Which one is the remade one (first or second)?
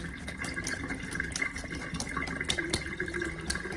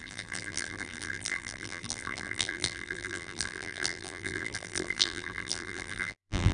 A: second